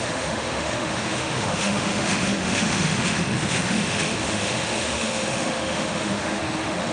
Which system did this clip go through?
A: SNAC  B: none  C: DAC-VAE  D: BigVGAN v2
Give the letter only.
C